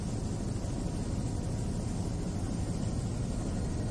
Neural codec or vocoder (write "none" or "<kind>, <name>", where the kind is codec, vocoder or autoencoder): none